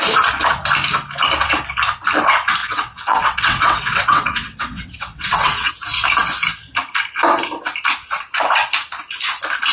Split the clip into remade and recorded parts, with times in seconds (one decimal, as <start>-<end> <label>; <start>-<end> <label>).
0.0-2.6 recorded; 2.6-5.7 remade; 5.7-9.7 recorded